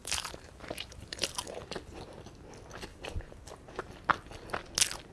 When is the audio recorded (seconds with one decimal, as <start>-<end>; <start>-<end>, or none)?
1.6-2.9; 3.8-5.1